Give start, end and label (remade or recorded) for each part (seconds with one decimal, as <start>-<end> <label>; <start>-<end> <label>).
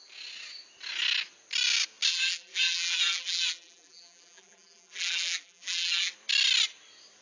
0.0-2.1 recorded; 2.1-6.1 remade; 6.1-7.2 recorded